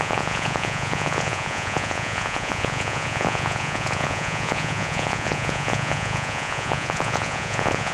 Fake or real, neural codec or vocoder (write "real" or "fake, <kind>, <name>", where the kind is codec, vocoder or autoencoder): fake, vocoder, Vocos